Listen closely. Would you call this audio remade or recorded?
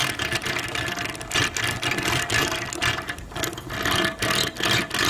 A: recorded